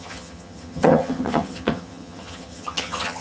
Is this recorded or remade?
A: remade